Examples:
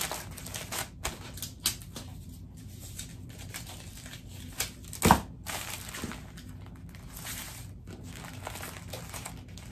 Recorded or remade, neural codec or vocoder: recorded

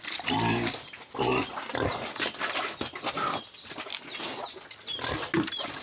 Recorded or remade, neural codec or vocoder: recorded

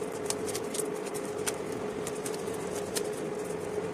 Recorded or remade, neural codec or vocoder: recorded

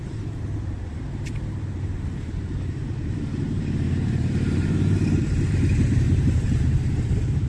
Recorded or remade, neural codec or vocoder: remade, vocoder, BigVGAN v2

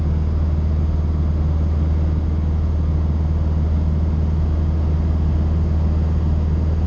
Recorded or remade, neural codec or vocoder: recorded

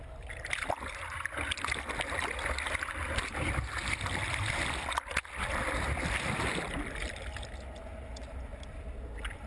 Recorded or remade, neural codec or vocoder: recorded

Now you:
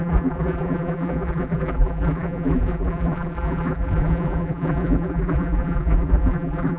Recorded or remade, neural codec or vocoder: remade, vocoder, BigVGAN v2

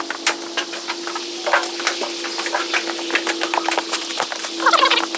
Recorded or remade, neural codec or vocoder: recorded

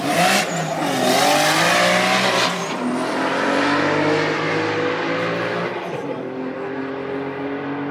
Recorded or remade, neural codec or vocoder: recorded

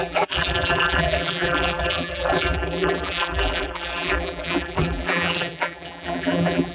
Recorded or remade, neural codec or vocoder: remade, vocoder, BigVGAN v2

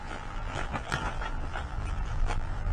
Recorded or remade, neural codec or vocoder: remade, vocoder, BigVGAN v2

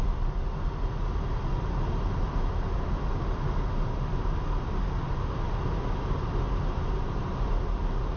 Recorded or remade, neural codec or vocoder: recorded